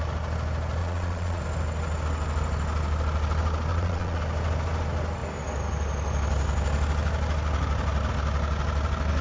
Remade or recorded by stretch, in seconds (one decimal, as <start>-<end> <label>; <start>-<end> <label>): 0.0-0.8 recorded; 0.8-1.4 remade; 1.4-3.7 recorded; 3.7-4.2 remade; 4.2-9.2 recorded